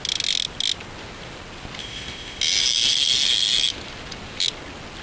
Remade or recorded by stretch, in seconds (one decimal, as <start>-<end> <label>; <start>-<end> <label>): 0.0-1.8 recorded; 1.8-2.4 remade; 2.4-5.0 recorded